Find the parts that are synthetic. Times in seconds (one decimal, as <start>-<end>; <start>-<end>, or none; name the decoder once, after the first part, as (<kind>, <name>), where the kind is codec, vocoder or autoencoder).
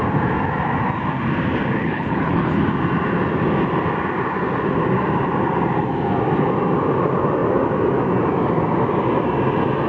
1.8-2.6 (codec, HILCodec)